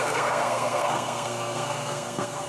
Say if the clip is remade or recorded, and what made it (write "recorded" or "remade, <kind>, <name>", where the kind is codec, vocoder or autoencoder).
remade, codec, SNAC